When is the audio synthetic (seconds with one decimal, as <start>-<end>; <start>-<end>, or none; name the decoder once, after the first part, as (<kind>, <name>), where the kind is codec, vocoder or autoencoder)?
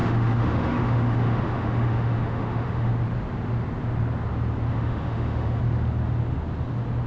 0.0-2.9 (autoencoder, DAC-VAE); 4.7-5.6